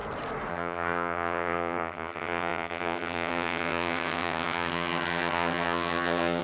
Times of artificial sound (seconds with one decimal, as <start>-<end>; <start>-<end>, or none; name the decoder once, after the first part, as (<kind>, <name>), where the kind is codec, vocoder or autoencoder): 0.5-6.4 (vocoder, HiFi-GAN)